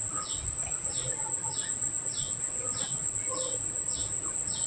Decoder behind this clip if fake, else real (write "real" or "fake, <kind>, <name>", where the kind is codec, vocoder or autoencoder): fake, vocoder, Vocos